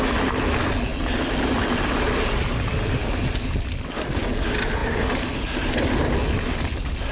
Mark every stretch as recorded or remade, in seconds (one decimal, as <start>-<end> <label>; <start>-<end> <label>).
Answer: 0.0-7.1 recorded